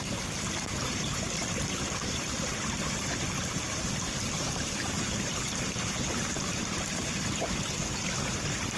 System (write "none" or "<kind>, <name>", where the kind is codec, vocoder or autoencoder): vocoder, BigVGAN v2